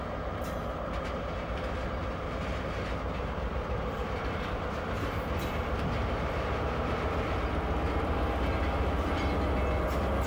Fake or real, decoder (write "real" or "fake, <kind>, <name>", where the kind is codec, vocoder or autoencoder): real